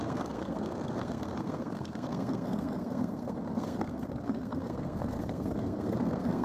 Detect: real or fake fake